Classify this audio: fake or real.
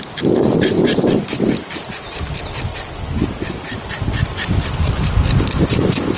fake